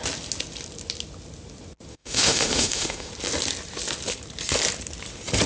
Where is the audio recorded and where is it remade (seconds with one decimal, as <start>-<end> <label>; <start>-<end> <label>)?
0.0-1.9 recorded; 1.9-3.1 remade; 3.1-5.5 recorded